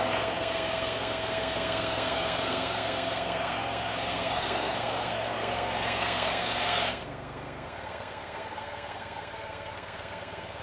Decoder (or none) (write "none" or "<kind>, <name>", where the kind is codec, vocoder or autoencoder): codec, SNAC